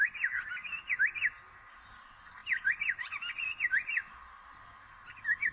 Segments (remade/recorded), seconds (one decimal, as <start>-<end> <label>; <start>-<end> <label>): 0.0-5.5 recorded